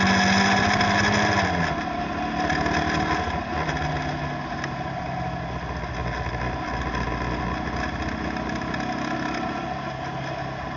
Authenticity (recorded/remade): recorded